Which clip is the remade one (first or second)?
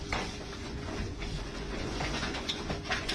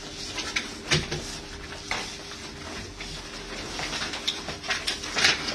first